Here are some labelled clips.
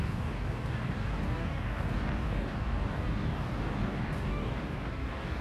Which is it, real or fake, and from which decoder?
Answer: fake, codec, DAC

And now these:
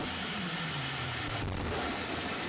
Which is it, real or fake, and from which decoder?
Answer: fake, vocoder, BigVGAN v2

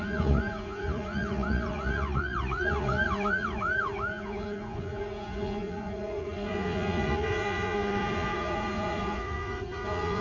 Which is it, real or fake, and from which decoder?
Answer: fake, vocoder, Vocos